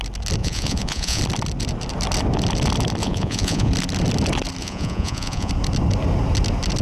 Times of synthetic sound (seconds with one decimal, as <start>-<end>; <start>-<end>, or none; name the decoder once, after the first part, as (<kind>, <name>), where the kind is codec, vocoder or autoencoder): 0.4-1.2 (vocoder, Vocos); 3.0-3.7; 4.6-5.5